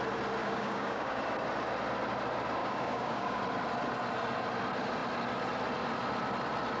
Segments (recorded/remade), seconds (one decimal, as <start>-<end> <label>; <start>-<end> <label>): 0.0-0.4 recorded; 0.4-1.2 remade; 1.2-2.6 recorded; 2.6-3.4 remade; 3.4-6.8 recorded